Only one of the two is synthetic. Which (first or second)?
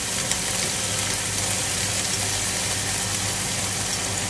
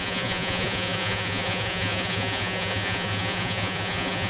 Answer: second